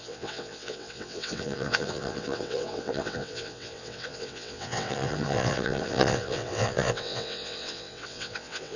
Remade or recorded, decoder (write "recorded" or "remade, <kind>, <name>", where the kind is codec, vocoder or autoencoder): remade, vocoder, WaveNeXt